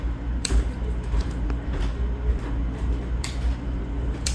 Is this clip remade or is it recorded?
remade